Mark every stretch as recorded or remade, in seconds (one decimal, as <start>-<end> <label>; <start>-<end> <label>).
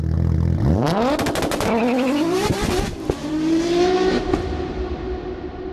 0.0-3.2 recorded; 3.2-4.4 remade; 4.4-5.7 recorded